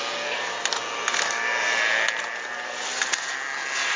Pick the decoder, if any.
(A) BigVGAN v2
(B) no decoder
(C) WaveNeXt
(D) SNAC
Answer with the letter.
B